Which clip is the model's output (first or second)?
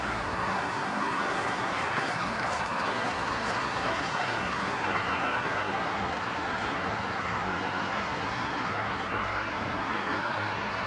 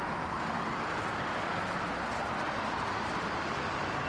first